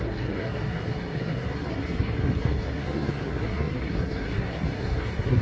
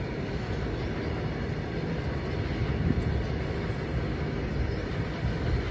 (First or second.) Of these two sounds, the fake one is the first